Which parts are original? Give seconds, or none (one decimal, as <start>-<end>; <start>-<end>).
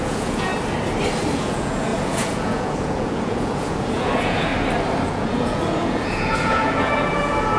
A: 0.5-1.3; 4.5-5.1